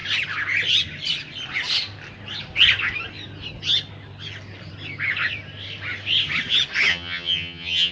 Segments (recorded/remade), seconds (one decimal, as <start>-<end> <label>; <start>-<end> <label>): 0.0-6.9 recorded; 6.9-7.9 remade